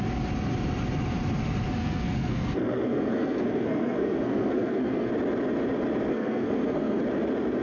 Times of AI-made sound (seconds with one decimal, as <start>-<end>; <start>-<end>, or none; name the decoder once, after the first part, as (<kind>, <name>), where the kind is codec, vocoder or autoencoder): 1.8-5.1 (codec, SNAC); 6.1-7.0